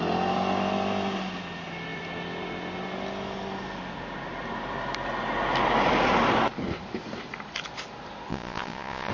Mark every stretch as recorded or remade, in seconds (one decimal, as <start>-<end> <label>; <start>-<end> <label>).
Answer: 0.0-8.3 recorded; 8.3-9.1 remade